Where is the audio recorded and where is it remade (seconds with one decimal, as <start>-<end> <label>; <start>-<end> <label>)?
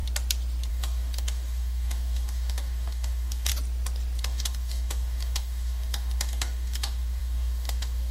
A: 0.0-0.7 recorded; 0.7-3.5 remade; 3.5-4.2 recorded; 4.2-8.1 remade